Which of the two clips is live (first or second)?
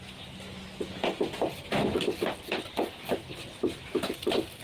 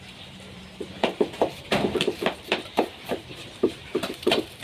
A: first